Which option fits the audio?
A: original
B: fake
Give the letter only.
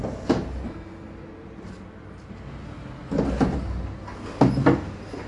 A